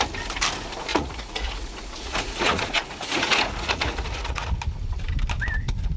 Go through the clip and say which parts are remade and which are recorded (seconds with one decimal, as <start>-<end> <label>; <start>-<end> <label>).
0.0-0.9 recorded; 0.9-4.5 remade; 4.5-6.0 recorded